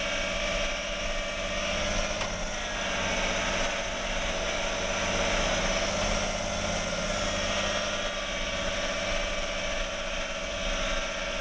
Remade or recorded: recorded